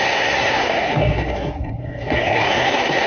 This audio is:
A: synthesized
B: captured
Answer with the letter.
A